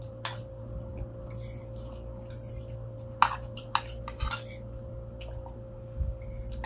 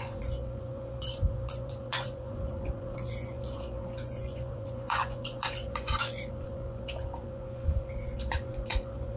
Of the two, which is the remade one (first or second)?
second